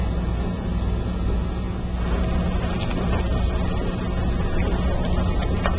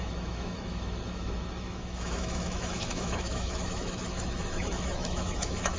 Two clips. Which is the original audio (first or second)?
first